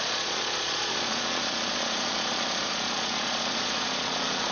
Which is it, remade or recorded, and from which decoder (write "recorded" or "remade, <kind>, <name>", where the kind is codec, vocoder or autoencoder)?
remade, vocoder, Vocos